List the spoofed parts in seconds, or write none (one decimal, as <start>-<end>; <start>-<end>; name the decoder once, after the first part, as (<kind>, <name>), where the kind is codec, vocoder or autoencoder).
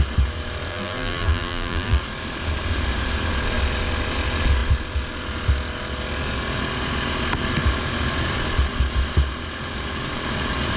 0.7-2.0 (vocoder, BigVGAN v2)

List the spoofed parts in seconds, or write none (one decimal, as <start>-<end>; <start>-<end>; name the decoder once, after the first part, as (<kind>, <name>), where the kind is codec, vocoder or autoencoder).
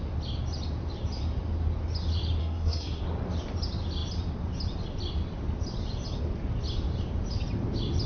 2.4-3.0 (codec, SNAC)